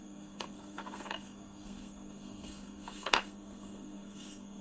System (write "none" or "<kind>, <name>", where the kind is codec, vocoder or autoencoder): codec, SNAC